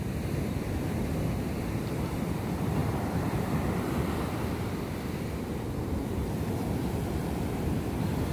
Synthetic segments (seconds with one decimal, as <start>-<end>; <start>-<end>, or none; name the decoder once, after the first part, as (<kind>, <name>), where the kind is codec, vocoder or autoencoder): 0.0-8.3 (vocoder, BigVGAN v2)